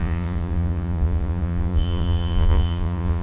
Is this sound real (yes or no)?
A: no